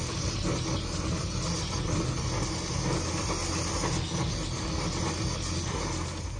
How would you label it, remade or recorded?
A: recorded